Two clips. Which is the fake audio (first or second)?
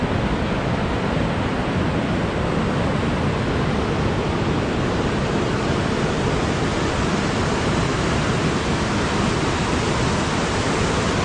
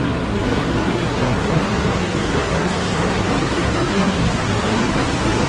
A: second